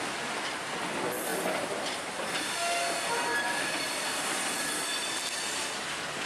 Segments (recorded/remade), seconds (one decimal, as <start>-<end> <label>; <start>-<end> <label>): 0.0-6.3 recorded